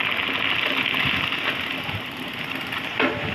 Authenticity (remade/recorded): recorded